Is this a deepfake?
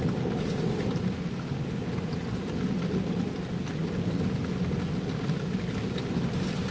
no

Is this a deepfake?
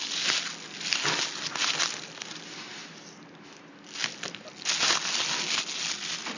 no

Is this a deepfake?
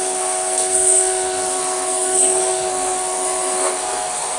yes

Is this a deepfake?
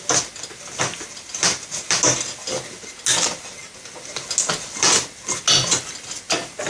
no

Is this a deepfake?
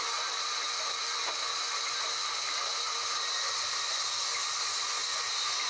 no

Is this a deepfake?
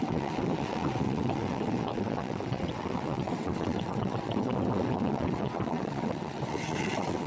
yes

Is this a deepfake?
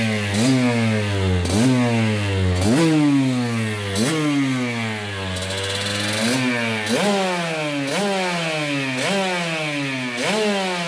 no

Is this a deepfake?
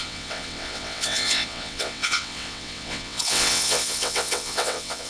yes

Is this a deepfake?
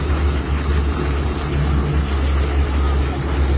no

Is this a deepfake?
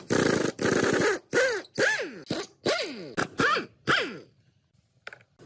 no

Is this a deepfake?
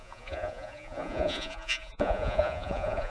yes